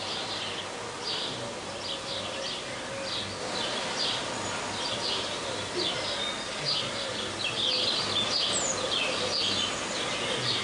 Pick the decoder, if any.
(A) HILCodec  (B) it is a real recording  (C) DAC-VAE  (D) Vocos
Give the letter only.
B